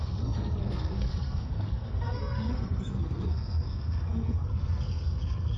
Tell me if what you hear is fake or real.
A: fake